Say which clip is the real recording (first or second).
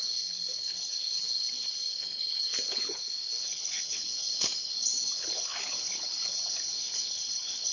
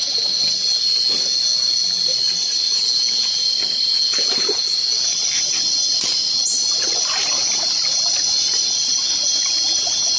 second